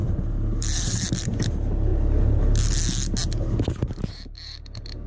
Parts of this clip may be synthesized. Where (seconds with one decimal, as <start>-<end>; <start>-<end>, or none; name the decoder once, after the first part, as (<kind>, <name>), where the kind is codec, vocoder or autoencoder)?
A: 0.0-1.1 (vocoder, BigVGAN v2)